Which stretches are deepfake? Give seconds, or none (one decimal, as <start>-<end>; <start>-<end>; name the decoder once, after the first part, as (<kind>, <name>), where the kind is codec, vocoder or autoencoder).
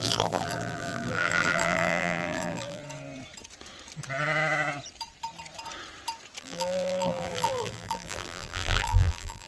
0.0-2.8 (vocoder, BigVGAN v2); 6.4-9.5